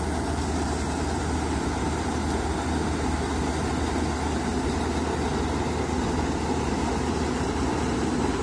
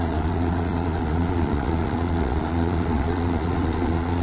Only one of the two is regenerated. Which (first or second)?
second